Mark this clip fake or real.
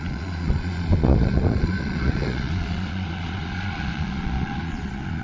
fake